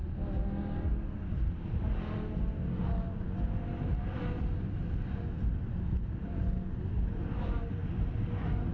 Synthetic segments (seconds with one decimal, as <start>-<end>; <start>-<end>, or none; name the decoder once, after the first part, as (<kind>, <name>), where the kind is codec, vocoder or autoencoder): none